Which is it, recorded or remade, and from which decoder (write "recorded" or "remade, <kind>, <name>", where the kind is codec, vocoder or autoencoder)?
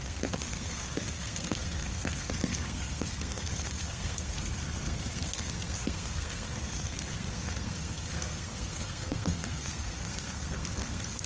remade, codec, SNAC